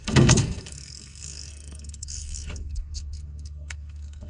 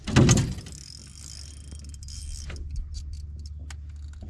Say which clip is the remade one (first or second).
first